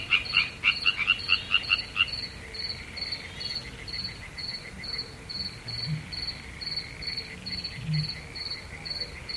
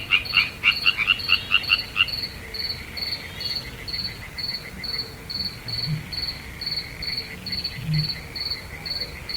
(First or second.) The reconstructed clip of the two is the first